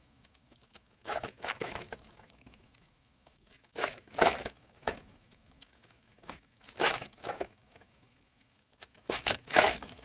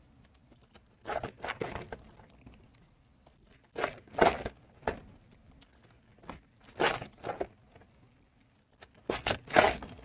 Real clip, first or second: second